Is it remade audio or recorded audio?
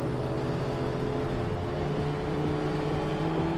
recorded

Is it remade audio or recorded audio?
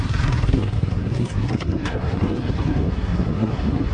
remade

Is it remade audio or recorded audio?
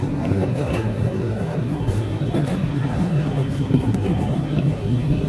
remade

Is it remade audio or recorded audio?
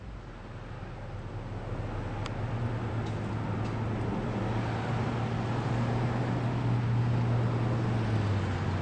recorded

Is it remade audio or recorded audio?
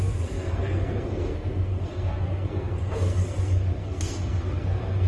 remade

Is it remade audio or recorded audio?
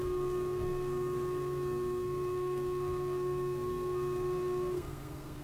remade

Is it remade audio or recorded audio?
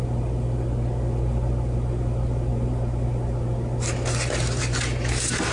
recorded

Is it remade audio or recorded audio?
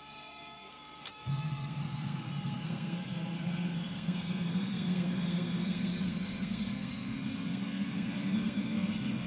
remade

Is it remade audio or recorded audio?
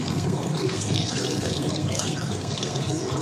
remade